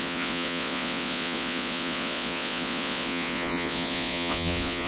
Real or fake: fake